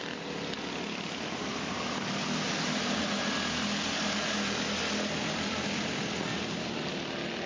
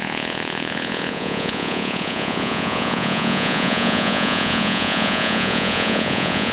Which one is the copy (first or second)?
second